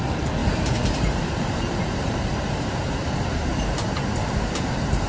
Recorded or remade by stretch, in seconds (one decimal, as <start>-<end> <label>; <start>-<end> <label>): 0.0-0.4 recorded; 0.4-3.5 remade; 3.5-4.2 recorded; 4.2-5.1 remade